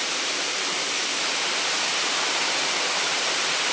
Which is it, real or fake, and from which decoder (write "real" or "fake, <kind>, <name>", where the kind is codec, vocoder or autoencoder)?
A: fake, vocoder, BigVGAN v2